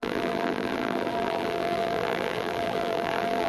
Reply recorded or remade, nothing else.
remade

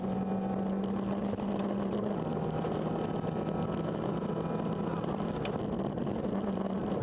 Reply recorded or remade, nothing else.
recorded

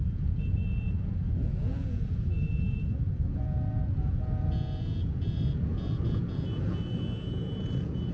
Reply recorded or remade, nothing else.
remade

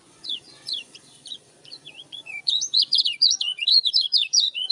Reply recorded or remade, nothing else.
remade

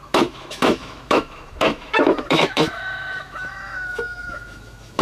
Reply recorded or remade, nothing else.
remade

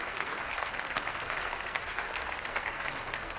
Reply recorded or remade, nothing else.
remade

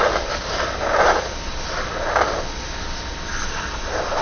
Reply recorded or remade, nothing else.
recorded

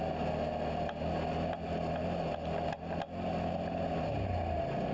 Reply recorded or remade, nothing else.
recorded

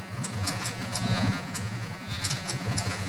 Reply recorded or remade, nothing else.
remade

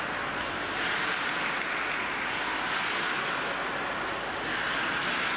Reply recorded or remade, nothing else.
recorded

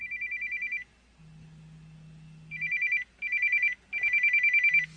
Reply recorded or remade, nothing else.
recorded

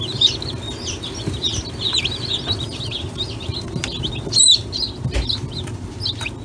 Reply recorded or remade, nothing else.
recorded